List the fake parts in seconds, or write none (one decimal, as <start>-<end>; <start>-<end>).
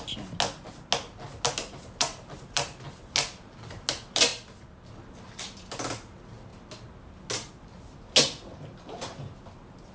none